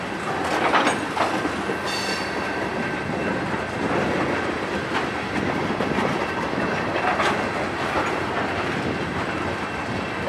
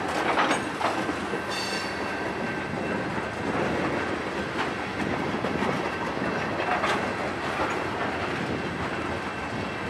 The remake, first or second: first